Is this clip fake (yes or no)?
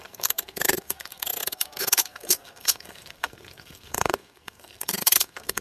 yes